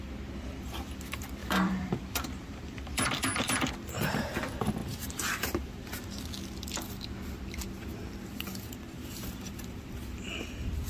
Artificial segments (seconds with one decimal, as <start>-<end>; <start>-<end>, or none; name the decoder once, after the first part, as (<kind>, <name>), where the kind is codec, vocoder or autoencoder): 1.4-4.2 (vocoder, BigVGAN v2); 4.8-6.2; 7.9-10.2